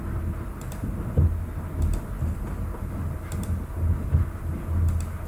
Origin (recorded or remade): recorded